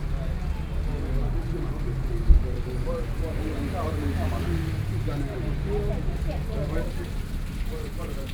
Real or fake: real